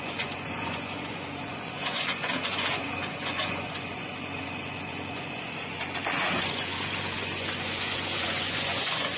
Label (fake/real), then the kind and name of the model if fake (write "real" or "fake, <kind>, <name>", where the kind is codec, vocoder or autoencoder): fake, vocoder, Vocos